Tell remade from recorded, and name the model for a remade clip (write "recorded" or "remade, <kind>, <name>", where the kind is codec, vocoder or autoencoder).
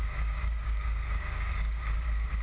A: remade, codec, DAC